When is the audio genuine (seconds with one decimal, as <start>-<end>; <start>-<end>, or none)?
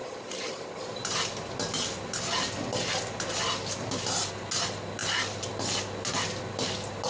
0.0-7.1